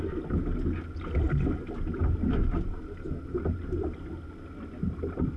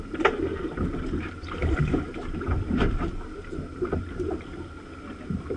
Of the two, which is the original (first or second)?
first